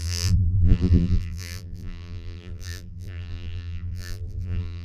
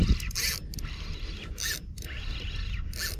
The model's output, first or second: first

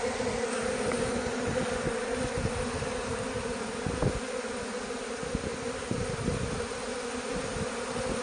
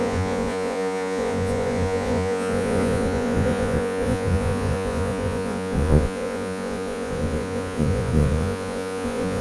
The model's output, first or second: second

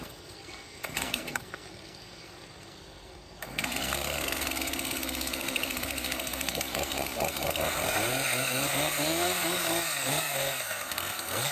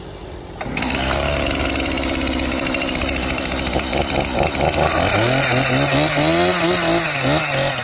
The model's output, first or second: first